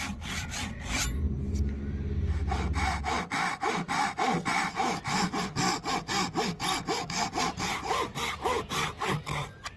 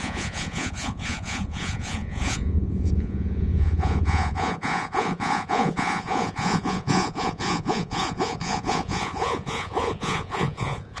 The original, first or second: first